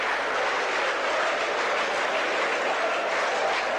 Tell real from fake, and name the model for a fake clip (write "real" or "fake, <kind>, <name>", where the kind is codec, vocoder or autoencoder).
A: real